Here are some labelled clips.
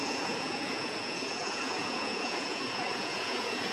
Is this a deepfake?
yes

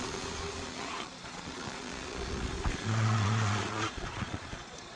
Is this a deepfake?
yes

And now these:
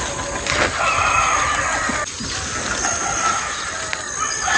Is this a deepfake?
no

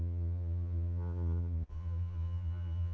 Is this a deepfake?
yes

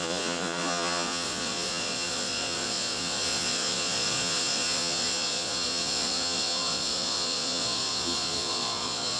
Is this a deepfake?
yes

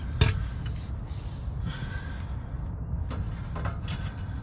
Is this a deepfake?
no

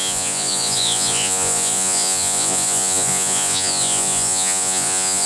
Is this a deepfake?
yes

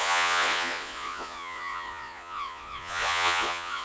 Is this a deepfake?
yes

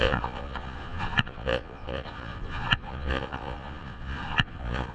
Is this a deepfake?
yes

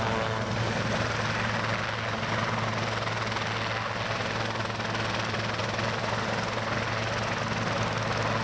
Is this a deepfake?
no